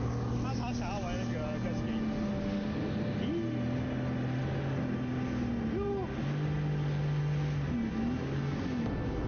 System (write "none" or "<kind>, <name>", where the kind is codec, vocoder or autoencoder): none